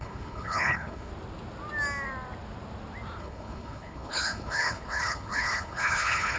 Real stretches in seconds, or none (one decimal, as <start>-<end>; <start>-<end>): 1.1-3.2